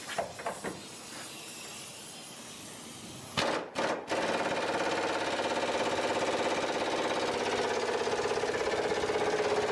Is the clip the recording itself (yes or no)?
yes